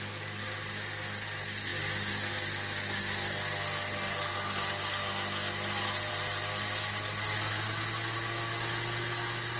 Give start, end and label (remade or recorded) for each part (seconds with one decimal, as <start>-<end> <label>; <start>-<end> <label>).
0.0-9.6 recorded